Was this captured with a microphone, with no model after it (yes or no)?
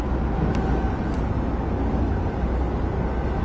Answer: yes